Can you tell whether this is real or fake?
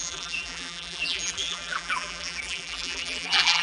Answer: fake